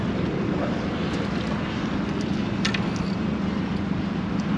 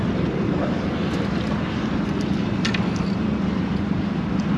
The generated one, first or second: second